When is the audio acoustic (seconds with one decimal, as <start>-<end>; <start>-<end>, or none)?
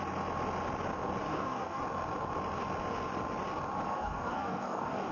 0.0-1.3; 1.8-3.9